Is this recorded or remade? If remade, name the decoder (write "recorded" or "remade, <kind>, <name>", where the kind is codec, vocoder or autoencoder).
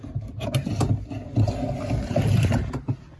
recorded